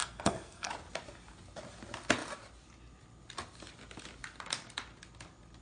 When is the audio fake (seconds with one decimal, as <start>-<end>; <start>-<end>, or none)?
0.0-0.7